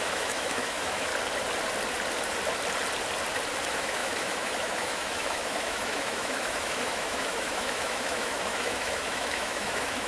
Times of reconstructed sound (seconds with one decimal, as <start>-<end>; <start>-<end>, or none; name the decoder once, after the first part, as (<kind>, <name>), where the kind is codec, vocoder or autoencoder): 0.0-1.1 (autoencoder, DAC-VAE); 3.6-10.1